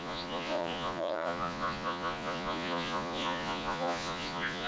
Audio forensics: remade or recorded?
remade